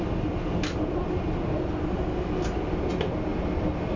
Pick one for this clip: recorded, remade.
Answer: recorded